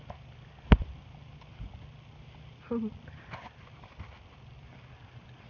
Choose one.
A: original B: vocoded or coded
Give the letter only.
A